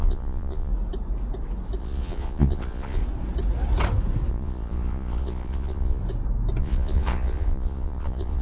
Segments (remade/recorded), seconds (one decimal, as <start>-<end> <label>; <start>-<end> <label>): 0.0-0.7 remade; 0.7-1.8 recorded; 1.8-3.0 remade; 3.0-4.3 recorded; 4.3-6.0 remade; 6.0-6.6 recorded; 6.6-8.4 remade